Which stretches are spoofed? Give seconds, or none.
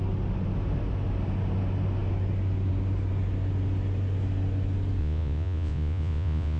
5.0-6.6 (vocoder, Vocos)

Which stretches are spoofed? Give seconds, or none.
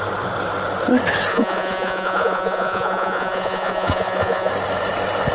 1.3-4.5 (vocoder, Vocos)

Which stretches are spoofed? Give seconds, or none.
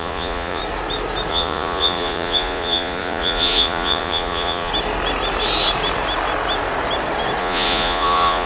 0.0-0.6 (vocoder, Vocos); 1.3-4.7; 7.4-8.5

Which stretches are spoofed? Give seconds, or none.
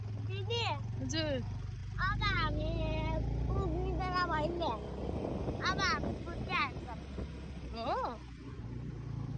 none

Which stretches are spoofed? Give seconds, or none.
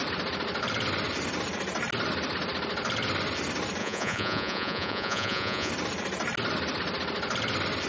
3.8-5.7 (vocoder, Vocos)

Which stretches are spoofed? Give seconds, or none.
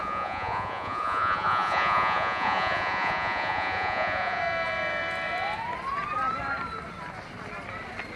0.0-4.4 (vocoder, Vocos)